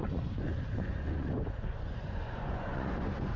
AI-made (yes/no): yes